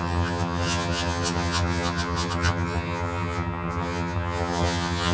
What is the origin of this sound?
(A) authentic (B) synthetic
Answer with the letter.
B